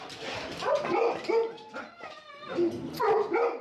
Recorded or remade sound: recorded